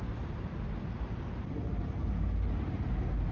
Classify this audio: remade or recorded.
recorded